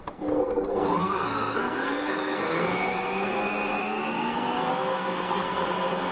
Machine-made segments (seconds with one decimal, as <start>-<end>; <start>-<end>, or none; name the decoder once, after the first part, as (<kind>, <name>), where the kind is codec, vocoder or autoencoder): 0.0-6.1 (codec, SNAC)

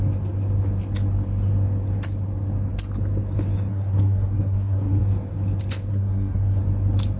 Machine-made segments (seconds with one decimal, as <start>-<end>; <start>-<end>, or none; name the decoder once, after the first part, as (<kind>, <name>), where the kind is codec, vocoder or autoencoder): 3.7-5.0 (codec, SNAC); 5.9-6.6

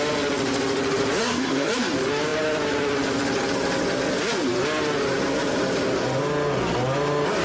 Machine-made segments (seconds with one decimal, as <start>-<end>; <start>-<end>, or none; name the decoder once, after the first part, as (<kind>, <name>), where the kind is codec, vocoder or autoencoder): 1.2-1.7 (codec, SNAC)

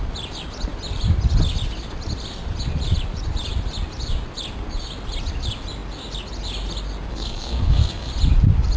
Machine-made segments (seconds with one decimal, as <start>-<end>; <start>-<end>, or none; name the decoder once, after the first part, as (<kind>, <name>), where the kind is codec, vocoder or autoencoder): 7.1-8.1 (codec, SNAC)

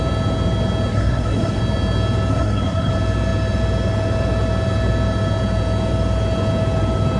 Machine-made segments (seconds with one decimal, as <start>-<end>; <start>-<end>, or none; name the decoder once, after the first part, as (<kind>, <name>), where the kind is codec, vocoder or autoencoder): 0.9-1.6 (codec, SNAC); 2.3-2.9